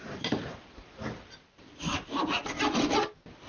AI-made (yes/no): no